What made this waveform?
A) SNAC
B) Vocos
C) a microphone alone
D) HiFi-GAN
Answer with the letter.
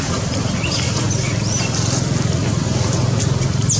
C